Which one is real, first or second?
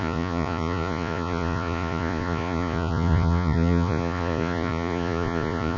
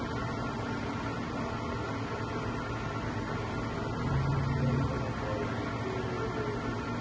second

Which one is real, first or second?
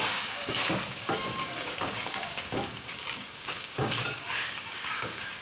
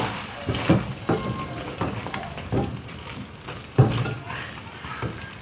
second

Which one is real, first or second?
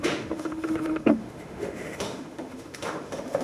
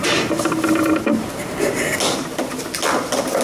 second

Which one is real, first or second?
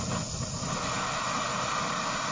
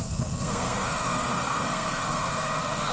first